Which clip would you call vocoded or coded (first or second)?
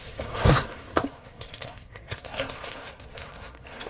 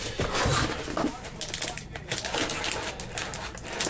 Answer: first